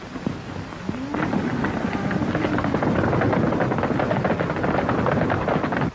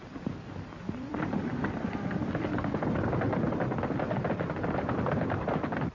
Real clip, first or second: first